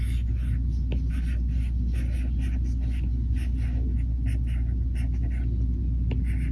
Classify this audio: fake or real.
real